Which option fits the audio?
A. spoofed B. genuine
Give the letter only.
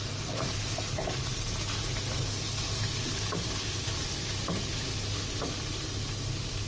B